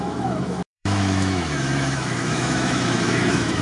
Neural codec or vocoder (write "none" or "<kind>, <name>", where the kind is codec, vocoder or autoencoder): autoencoder, DAC-VAE